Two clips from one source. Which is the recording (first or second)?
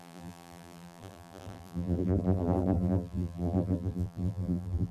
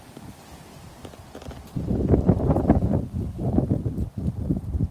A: second